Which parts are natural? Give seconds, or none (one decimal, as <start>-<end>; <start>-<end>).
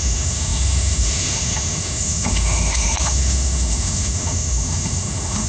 none